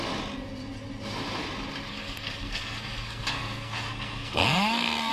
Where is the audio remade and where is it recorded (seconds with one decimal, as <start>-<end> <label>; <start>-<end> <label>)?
0.0-1.9 recorded; 1.9-5.1 remade